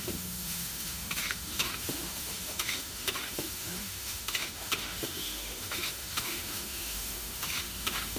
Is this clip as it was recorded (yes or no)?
no